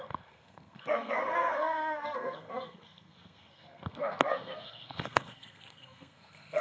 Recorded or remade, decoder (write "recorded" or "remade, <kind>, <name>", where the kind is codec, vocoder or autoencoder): remade, codec, SNAC